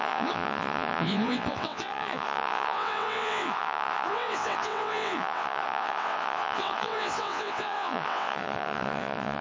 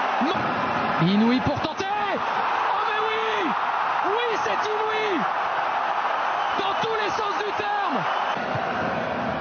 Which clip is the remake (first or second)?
first